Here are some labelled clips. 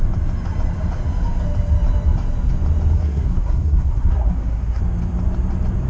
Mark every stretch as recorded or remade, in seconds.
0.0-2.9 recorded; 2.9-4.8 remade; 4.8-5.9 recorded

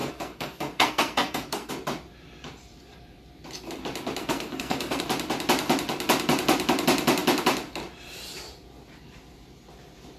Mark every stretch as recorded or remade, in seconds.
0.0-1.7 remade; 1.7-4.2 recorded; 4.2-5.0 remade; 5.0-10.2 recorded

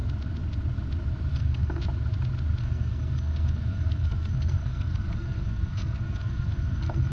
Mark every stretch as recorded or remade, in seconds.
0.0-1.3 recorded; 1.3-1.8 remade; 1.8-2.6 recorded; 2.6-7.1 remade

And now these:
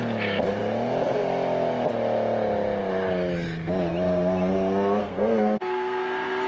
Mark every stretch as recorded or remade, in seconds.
0.0-5.0 recorded; 5.0-6.0 remade; 6.0-6.5 recorded

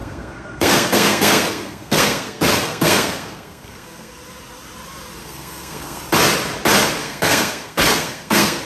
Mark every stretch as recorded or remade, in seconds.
0.0-4.1 remade; 4.1-5.2 recorded; 5.2-6.0 remade; 6.0-7.0 recorded; 7.0-8.6 remade

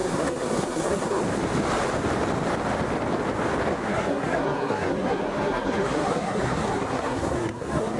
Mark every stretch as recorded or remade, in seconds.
0.0-1.2 remade; 1.2-3.7 recorded; 3.7-8.0 remade

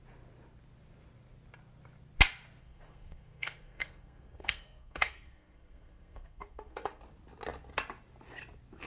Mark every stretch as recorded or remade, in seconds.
0.0-2.6 recorded; 2.6-7.0 remade; 7.0-8.9 recorded

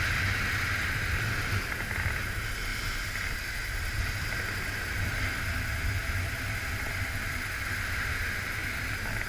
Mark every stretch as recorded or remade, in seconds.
0.0-9.3 recorded